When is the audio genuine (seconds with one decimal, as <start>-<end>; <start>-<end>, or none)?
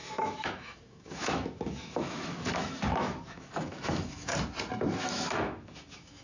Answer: 4.3-5.0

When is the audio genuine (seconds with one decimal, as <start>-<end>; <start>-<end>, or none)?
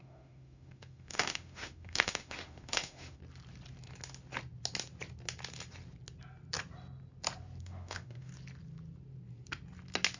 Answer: 3.2-7.6; 8.3-10.2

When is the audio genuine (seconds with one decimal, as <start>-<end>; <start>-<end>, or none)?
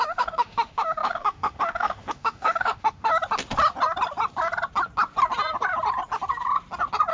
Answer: 3.1-7.1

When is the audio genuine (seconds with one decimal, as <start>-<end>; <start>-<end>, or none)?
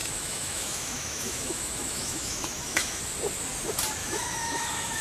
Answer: 3.0-4.0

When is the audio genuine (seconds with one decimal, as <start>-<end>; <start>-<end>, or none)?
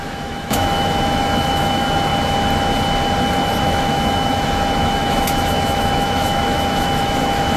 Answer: 2.1-3.6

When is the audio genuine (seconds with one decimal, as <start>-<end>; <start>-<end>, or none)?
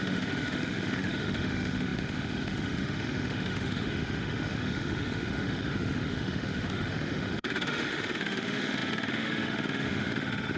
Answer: none